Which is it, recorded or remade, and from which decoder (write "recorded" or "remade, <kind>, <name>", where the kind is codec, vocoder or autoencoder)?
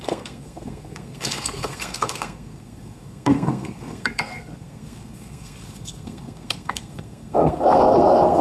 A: remade, codec, SNAC